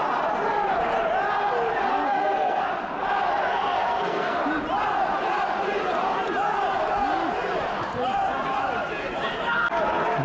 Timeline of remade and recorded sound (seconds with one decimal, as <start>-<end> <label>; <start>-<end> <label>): 0.0-1.9 recorded; 1.9-2.7 remade; 2.7-3.5 recorded; 3.5-4.4 remade; 4.4-10.2 recorded